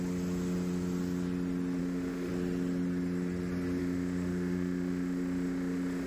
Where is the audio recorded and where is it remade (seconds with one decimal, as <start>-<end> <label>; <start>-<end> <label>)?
0.0-1.8 recorded; 1.8-2.3 remade; 2.3-3.8 recorded; 3.8-6.1 remade